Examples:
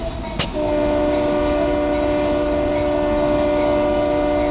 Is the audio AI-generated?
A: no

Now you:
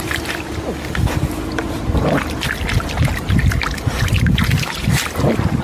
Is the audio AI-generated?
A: no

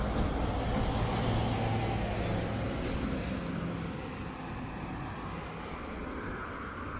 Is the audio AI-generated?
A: no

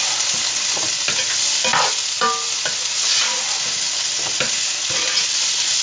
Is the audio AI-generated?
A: no